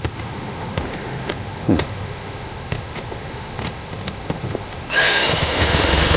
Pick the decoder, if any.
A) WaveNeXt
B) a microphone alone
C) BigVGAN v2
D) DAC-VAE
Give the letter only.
D